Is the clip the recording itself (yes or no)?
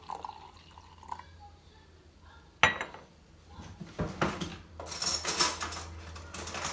yes